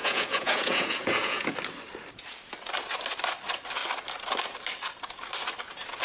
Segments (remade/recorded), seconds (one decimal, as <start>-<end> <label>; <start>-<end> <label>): 0.0-1.5 remade; 1.5-6.0 recorded